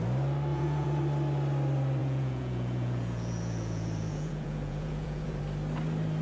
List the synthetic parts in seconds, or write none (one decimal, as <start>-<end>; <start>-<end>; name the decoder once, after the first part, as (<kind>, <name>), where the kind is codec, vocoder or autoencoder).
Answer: 0.5-1.0 (vocoder, Vocos); 2.0-5.4